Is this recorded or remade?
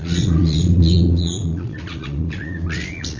remade